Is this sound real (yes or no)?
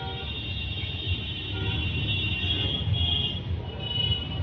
yes